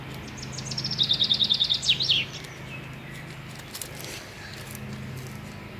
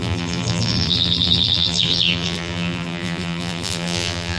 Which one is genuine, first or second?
first